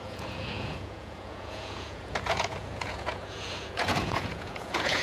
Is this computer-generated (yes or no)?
yes